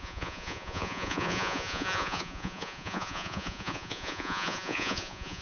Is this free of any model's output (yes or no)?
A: no